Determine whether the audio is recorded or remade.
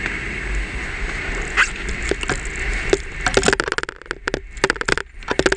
recorded